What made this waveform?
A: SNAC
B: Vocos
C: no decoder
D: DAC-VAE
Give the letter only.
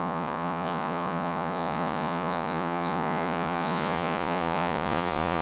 B